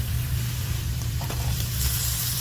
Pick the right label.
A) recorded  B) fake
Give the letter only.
B